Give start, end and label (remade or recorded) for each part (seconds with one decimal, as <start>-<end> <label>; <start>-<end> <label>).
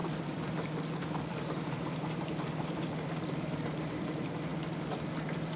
0.0-4.5 remade; 4.5-5.1 recorded; 5.1-5.6 remade